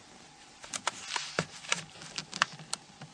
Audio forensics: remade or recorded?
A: recorded